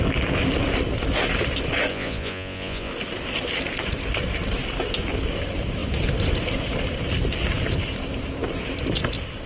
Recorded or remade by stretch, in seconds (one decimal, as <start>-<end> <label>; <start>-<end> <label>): 0.0-1.9 recorded; 1.9-2.9 remade; 2.9-9.5 recorded